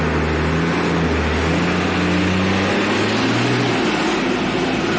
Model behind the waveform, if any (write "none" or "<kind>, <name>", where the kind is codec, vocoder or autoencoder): none